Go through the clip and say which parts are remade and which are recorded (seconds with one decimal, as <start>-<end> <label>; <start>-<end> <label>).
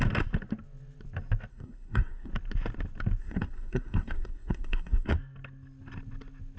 0.0-1.5 recorded; 1.5-2.3 remade; 2.3-3.2 recorded; 3.2-5.1 remade; 5.1-6.6 recorded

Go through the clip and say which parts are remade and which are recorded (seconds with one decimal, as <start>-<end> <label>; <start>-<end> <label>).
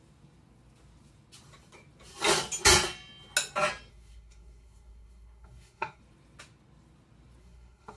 0.0-3.9 recorded; 3.9-6.0 remade; 6.0-7.4 recorded; 7.4-8.0 remade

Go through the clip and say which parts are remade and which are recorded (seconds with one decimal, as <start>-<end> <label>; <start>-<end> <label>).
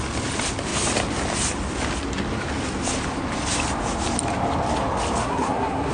0.0-5.2 recorded; 5.2-5.9 remade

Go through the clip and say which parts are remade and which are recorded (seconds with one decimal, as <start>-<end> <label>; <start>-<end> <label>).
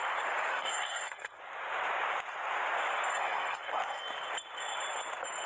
0.0-0.5 recorded; 0.5-1.4 remade; 1.4-3.1 recorded; 3.1-3.7 remade; 3.7-5.5 recorded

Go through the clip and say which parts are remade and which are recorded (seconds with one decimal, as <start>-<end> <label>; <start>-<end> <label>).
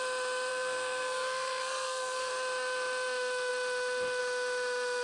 0.0-0.5 recorded; 0.5-2.3 remade; 2.3-5.0 recorded